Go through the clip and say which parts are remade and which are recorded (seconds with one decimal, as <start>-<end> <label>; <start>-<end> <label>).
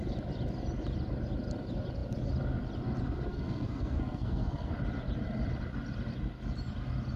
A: 0.0-3.3 recorded; 3.3-4.7 remade; 4.7-7.2 recorded